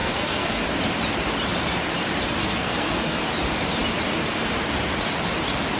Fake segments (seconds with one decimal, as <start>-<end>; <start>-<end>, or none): 0.0-0.6; 2.4-3.2